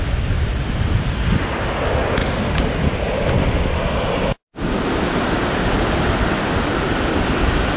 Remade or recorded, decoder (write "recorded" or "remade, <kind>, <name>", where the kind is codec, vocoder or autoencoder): recorded